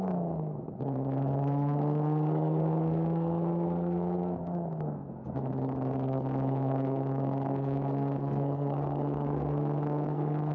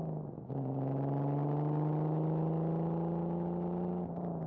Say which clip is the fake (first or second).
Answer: first